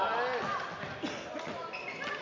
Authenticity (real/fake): real